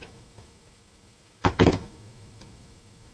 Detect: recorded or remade remade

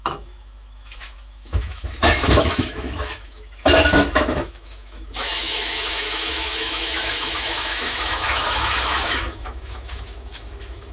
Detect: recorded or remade remade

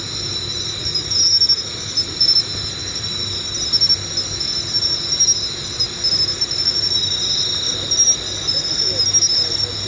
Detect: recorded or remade recorded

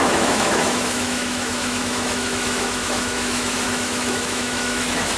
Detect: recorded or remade remade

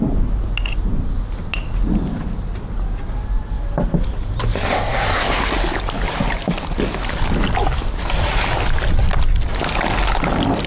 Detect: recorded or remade recorded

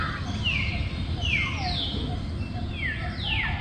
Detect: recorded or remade recorded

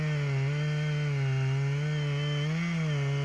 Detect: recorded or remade recorded